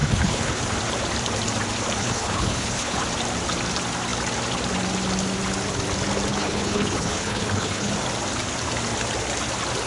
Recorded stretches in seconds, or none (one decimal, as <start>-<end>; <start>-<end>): 0.6-2.0; 3.0-6.3; 7.9-9.9